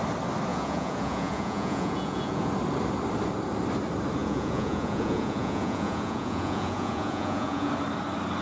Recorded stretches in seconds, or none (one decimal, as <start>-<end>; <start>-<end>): 0.0-0.5; 2.5-4.2; 7.7-8.4